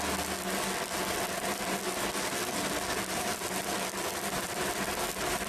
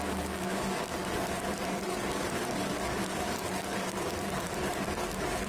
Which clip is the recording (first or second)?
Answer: first